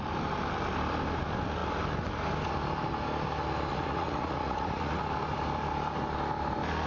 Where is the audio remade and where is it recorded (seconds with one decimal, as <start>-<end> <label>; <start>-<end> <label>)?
0.0-3.7 recorded; 3.7-5.0 remade; 5.0-6.9 recorded